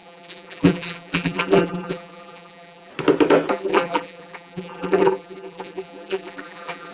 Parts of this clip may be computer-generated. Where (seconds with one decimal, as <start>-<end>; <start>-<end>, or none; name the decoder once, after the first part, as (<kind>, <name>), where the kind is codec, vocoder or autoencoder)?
0.0-2.9 (vocoder, BigVGAN v2); 3.5-6.9